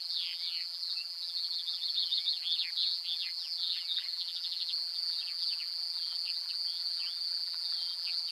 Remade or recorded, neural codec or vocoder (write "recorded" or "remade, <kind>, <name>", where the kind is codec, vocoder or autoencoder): remade, vocoder, BigVGAN v2